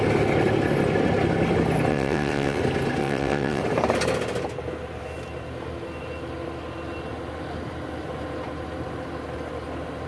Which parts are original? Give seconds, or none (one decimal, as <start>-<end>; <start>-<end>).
0.0-1.9; 2.6-3.0; 3.6-10.1